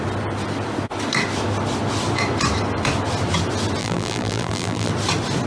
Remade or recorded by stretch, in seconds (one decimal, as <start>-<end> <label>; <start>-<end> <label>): 0.0-3.8 recorded; 3.8-4.9 remade; 4.9-5.5 recorded